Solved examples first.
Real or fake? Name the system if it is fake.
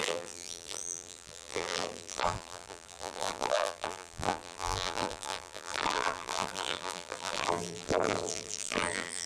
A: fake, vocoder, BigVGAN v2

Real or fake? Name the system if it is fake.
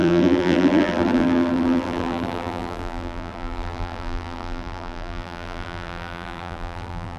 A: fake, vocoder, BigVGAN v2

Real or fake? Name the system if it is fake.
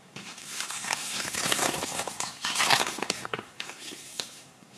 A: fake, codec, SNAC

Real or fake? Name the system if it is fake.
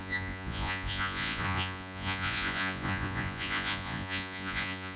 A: fake, vocoder, Vocos